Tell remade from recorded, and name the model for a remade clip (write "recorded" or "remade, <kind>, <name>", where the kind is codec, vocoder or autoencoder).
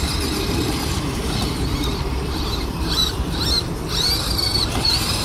remade, vocoder, BigVGAN v2